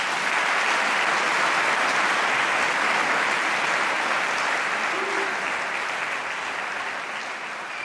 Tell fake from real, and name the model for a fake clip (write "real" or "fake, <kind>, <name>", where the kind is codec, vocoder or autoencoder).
real